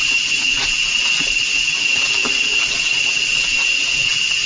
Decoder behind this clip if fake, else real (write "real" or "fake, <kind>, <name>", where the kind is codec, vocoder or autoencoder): real